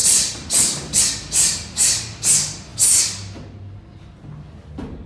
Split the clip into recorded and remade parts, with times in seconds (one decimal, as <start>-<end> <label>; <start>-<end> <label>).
0.0-1.0 remade; 1.0-5.1 recorded